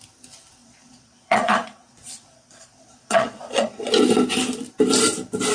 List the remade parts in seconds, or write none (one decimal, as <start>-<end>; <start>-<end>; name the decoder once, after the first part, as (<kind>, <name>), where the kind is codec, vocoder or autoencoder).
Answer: 0.6-3.9 (vocoder, Vocos)